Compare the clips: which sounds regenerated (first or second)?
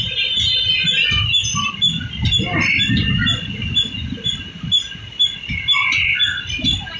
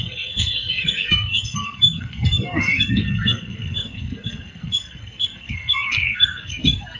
second